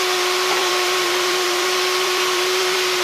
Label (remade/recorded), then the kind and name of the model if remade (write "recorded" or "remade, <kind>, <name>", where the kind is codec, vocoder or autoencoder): remade, vocoder, BigVGAN v2